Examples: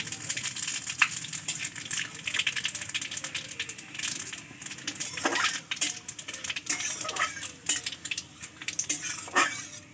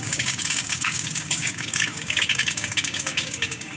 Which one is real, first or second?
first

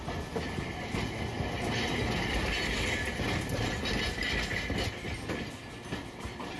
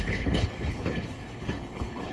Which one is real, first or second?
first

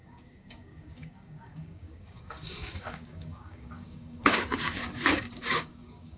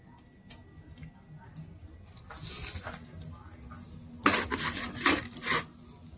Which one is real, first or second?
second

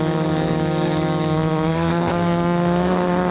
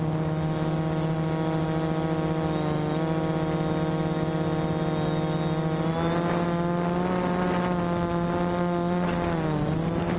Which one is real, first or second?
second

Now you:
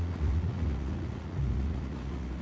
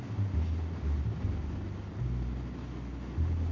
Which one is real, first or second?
second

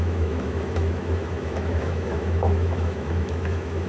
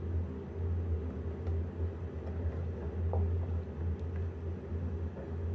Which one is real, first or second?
second